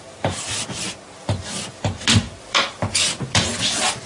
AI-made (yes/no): yes